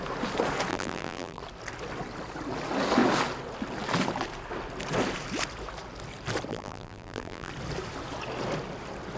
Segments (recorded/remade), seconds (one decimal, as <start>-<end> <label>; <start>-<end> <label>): 0.0-0.7 recorded; 0.7-1.4 remade; 1.4-6.5 recorded; 6.5-7.5 remade; 7.5-9.2 recorded